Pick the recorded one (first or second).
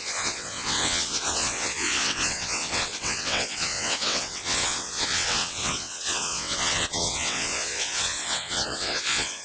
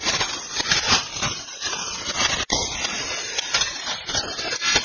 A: second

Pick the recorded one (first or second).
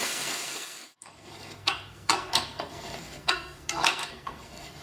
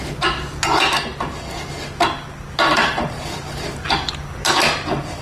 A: second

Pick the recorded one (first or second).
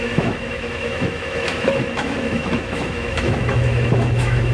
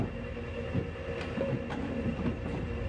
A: second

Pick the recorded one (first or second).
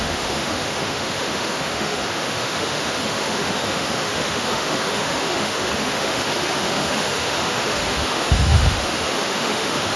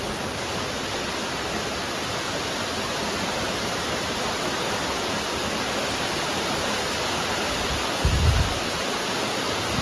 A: second